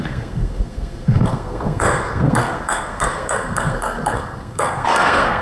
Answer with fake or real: fake